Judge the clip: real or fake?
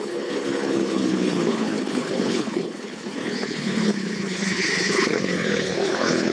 fake